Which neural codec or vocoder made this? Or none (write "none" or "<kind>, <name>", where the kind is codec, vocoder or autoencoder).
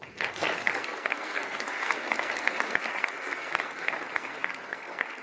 codec, SNAC